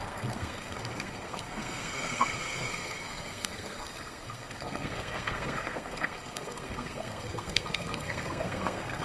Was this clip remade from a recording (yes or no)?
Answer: yes